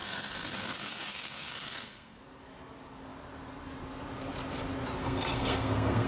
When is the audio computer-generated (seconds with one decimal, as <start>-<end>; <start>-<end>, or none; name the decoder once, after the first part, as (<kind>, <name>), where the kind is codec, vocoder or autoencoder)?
0.0-2.2 (codec, SNAC); 5.0-6.1